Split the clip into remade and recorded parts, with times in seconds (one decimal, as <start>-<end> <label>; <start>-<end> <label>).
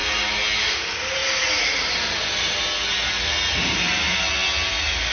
0.0-5.1 recorded